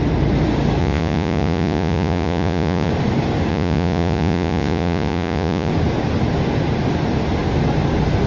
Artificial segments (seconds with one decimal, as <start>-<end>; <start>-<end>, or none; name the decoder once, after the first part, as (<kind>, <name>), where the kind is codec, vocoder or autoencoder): 0.8-2.9 (vocoder, Vocos); 3.5-5.7